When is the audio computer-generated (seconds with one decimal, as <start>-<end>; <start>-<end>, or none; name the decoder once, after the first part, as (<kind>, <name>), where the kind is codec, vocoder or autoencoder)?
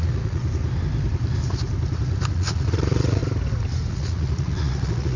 0.0-0.4 (vocoder, Vocos); 2.3-3.2; 3.9-5.2